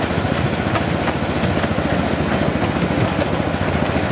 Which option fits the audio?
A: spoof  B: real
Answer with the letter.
B